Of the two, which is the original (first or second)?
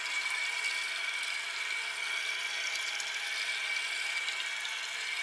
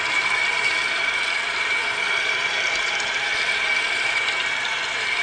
first